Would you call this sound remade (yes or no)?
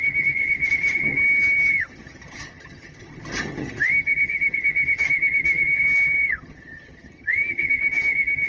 yes